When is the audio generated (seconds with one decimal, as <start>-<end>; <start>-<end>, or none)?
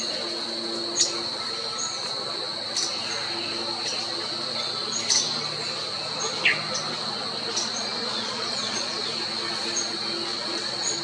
7.9-9.0; 10.3-11.0